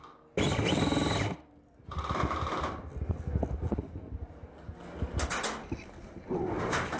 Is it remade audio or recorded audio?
recorded